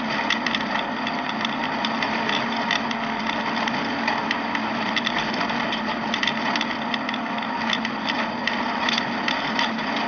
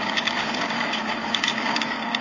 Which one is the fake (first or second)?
second